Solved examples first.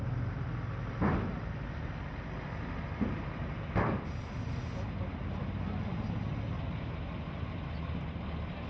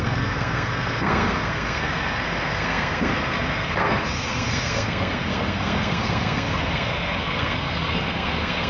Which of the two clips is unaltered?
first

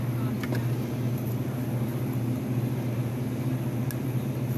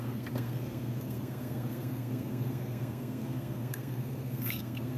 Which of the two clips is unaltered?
first